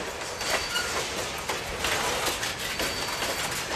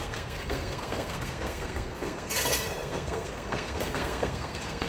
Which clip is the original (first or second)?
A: first